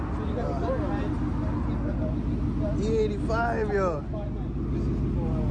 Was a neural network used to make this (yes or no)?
no